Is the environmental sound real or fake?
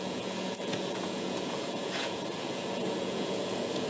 fake